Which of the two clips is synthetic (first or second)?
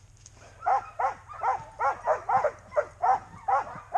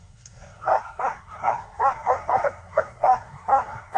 second